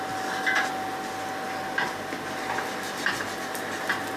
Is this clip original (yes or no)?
yes